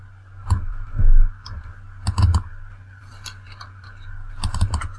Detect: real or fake real